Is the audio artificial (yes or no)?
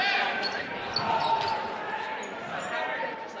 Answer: no